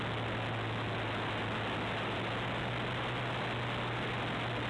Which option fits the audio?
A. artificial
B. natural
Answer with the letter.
B